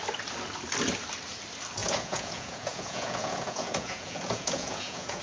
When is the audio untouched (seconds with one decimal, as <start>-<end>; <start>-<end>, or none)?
0.0-1.8